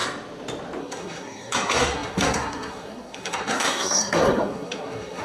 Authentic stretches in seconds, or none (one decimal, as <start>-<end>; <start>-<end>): 0.0-0.8